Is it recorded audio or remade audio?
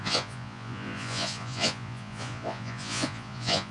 remade